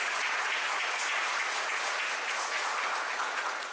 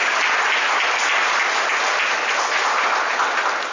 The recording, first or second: second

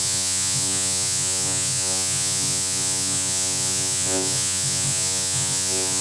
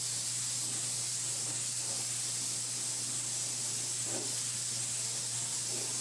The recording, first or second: second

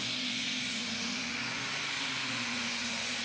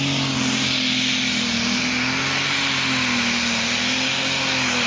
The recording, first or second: second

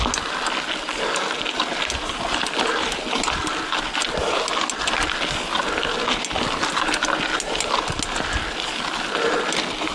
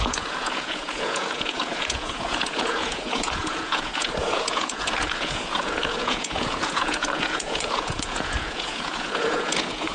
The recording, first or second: first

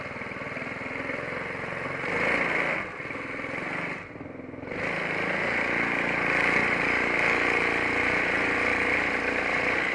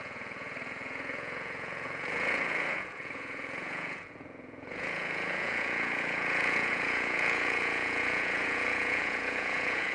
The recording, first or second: first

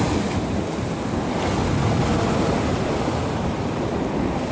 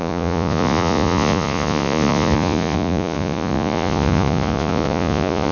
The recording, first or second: first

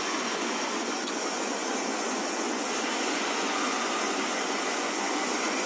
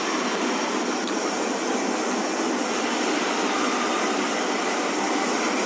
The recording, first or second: second